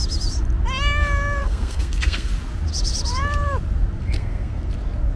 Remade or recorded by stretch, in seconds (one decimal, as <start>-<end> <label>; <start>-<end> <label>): 0.0-1.4 recorded; 1.4-2.3 remade; 2.3-4.0 recorded; 4.0-4.7 remade; 4.7-5.2 recorded